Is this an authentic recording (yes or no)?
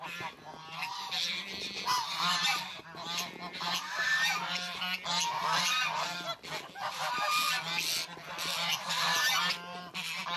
yes